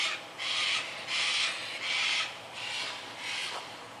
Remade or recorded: recorded